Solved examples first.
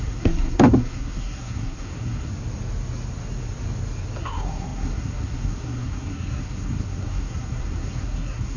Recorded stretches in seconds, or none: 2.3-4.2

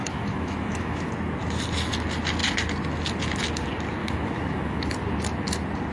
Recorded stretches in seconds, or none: 1.1-4.0; 4.8-5.9